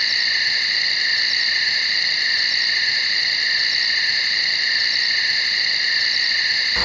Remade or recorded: recorded